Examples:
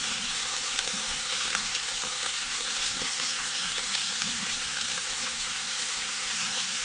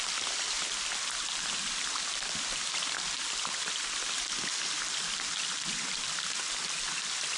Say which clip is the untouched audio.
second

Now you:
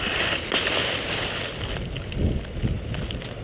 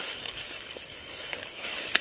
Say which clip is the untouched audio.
first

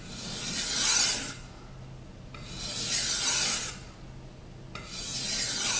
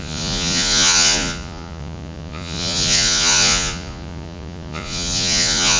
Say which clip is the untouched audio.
first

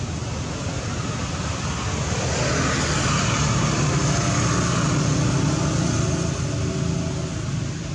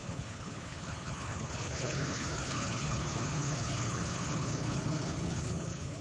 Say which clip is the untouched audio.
first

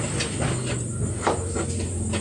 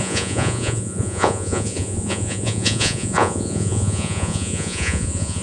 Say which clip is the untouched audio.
first